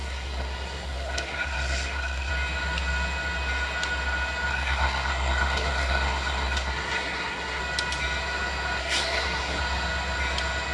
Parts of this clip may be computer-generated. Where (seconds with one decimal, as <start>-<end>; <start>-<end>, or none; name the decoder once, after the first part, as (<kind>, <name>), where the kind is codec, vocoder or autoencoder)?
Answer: 0.0-2.3 (codec, SNAC); 4.5-7.6; 8.8-9.6